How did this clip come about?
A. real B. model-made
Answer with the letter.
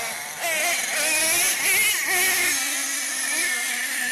A